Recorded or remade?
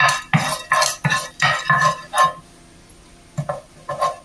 recorded